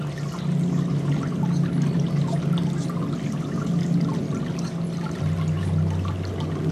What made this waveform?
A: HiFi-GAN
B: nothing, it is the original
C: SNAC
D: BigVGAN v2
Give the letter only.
B